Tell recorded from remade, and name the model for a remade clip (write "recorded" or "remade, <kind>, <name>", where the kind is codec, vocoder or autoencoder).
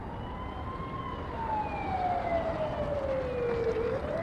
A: recorded